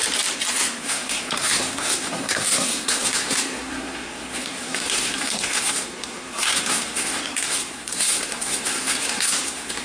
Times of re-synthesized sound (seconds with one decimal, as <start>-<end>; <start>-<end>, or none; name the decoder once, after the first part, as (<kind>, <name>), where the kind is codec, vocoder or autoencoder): 0.5-9.8 (codec, SNAC)